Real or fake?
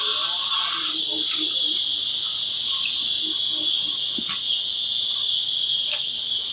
real